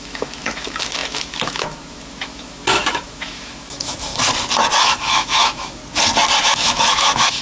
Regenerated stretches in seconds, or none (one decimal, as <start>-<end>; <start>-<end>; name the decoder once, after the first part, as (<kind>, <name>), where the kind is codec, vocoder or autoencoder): 0.0-4.1 (autoencoder, DAC-VAE); 4.8-5.8; 6.4-7.4